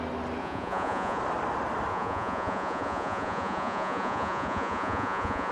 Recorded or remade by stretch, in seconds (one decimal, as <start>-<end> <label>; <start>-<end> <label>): 0.0-0.4 recorded; 0.4-1.2 remade; 1.2-1.9 recorded; 1.9-5.5 remade